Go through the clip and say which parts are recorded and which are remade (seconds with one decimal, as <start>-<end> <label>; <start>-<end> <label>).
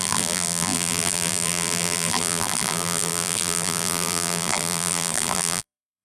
0.0-6.0 remade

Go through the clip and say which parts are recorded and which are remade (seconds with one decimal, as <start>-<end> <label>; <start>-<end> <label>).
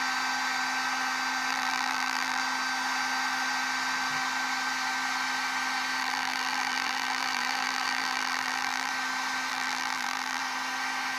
0.0-1.5 recorded; 1.5-2.4 remade; 2.4-6.0 recorded; 6.0-8.9 remade; 8.9-9.5 recorded; 9.5-10.4 remade; 10.4-11.2 recorded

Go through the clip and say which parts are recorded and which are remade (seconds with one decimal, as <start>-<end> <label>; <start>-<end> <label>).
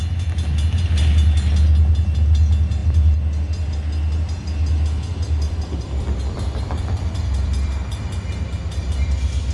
0.0-5.1 recorded; 5.1-9.1 remade; 9.1-9.5 recorded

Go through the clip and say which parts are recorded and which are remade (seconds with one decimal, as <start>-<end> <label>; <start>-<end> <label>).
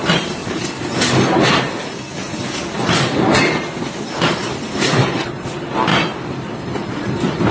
0.0-0.4 remade; 0.4-4.2 recorded; 4.2-5.9 remade; 5.9-6.6 recorded; 6.6-7.5 remade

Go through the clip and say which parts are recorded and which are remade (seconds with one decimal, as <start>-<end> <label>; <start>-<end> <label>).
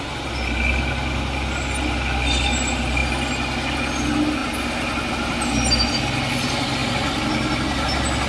0.0-8.3 recorded